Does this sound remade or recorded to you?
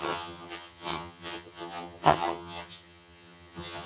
remade